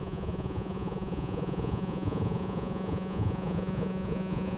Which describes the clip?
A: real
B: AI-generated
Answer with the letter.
B